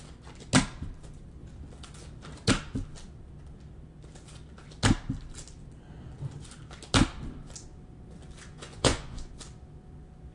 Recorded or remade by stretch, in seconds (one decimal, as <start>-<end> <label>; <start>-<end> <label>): 0.0-8.5 recorded; 8.5-9.3 remade; 9.3-10.3 recorded